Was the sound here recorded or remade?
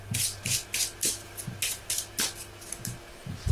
recorded